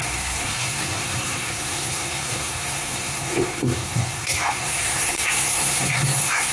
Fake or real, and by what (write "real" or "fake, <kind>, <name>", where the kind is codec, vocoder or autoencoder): fake, codec, SNAC